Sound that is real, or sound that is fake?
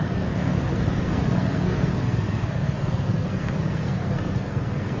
fake